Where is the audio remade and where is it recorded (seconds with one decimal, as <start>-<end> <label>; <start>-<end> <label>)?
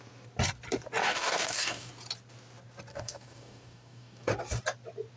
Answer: 0.0-1.0 recorded; 1.0-1.9 remade; 1.9-2.9 recorded; 2.9-4.3 remade; 4.3-5.2 recorded